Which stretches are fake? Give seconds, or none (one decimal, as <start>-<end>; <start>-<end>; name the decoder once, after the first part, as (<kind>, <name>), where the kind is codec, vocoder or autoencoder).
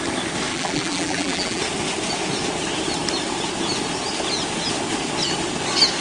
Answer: 0.5-1.6 (vocoder, BigVGAN v2)